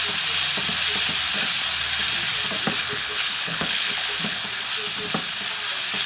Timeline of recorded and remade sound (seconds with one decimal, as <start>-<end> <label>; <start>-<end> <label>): 0.0-2.8 recorded; 2.8-4.4 remade; 4.4-6.1 recorded